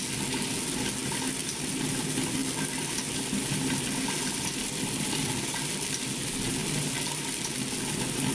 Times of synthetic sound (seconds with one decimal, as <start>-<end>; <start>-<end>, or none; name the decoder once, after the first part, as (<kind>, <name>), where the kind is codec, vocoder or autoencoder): 1.4-2.0 (vocoder, BigVGAN v2); 2.4-5.1; 6.6-7.4

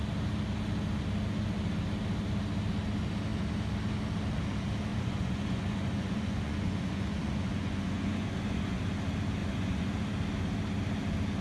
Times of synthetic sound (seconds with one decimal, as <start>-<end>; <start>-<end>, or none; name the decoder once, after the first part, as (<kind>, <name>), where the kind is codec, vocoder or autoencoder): 4.9-8.8 (vocoder, Vocos); 9.4-9.9

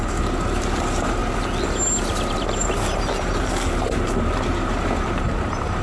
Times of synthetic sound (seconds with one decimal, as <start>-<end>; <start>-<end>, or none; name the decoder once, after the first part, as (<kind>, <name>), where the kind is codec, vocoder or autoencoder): 0.0-1.2 (vocoder, BigVGAN v2); 2.3-5.8